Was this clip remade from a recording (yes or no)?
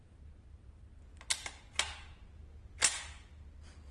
no